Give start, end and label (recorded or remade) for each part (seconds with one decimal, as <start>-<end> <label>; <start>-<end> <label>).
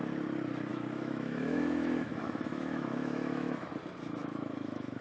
0.0-0.7 recorded; 0.7-3.7 remade; 3.7-4.2 recorded; 4.2-5.0 remade